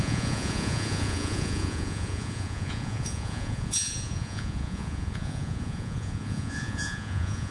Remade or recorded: remade